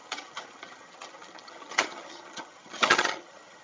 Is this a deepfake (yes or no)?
yes